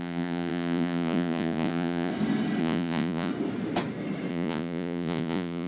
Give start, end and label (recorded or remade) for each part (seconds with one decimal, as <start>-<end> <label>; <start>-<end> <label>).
0.0-2.1 remade; 2.1-2.6 recorded; 2.6-3.3 remade; 3.3-4.3 recorded; 4.3-5.7 remade